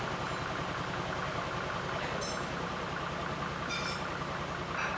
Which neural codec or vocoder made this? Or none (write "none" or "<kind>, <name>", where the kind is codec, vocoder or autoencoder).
none